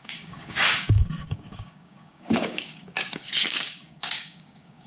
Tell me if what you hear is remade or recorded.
remade